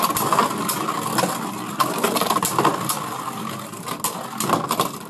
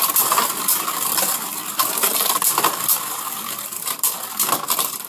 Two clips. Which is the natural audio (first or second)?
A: first